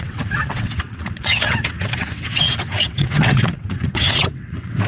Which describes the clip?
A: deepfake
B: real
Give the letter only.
A